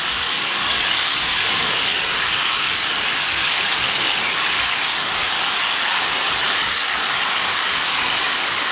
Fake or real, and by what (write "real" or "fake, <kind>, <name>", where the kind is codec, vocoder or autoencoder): fake, codec, DAC